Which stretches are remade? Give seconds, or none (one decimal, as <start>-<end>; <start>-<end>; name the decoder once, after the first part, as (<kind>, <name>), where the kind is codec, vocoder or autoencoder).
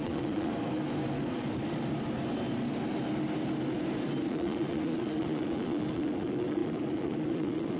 0.0-0.5 (vocoder, Vocos); 4.3-7.8